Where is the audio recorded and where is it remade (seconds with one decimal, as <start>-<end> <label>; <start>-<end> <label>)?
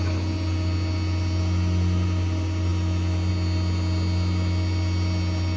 0.0-5.6 recorded